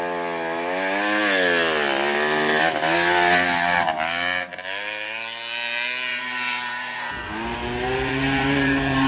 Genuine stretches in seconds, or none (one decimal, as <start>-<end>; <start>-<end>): 0.0-6.1